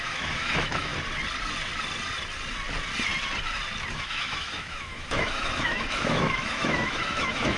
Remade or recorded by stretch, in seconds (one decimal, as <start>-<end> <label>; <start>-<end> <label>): 0.0-0.9 remade; 0.9-3.9 recorded; 3.9-7.6 remade